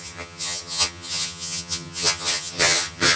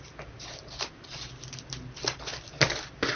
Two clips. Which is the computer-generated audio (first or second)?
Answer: first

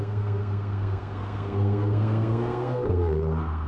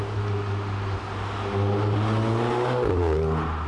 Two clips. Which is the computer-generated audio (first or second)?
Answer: first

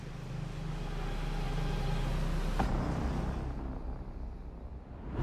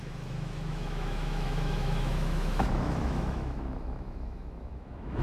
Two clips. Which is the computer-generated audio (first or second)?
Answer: second